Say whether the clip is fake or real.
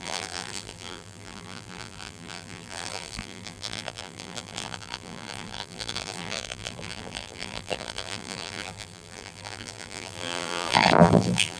fake